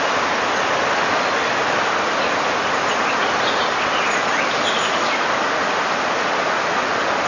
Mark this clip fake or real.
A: real